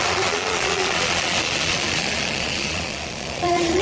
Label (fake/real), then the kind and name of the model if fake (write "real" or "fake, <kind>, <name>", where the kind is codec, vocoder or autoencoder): fake, vocoder, Vocos